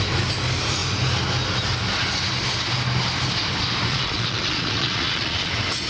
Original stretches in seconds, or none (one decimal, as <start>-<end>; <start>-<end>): 0.0-3.9; 5.5-5.9